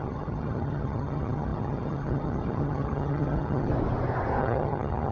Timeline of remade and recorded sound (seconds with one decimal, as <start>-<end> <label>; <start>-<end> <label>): 0.0-3.7 remade; 3.7-4.4 recorded; 4.4-5.1 remade